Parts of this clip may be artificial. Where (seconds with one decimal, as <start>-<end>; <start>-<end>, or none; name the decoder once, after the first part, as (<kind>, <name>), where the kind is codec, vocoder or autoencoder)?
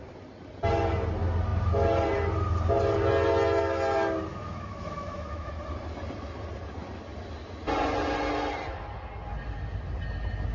4.3-5.5 (autoencoder, DAC-VAE)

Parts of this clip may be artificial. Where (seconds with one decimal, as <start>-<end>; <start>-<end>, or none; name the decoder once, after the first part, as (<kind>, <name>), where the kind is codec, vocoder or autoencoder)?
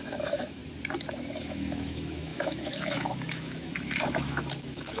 0.0-0.6 (autoencoder, DAC-VAE); 1.4-5.0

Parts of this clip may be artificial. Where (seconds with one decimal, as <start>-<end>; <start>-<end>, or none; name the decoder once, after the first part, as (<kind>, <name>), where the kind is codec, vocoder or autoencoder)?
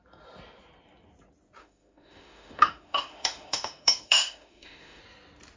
1.6-5.0 (autoencoder, DAC-VAE)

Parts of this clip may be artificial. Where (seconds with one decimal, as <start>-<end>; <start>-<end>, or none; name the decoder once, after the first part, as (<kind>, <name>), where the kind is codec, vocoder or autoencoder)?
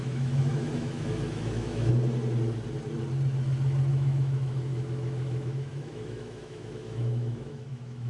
0.0-1.9 (autoencoder, DAC-VAE); 3.9-8.1